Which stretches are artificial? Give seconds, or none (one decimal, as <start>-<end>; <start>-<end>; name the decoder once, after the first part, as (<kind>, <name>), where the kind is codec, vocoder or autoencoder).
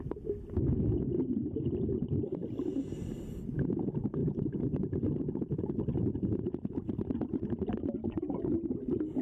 none